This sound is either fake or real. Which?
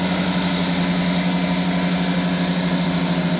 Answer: real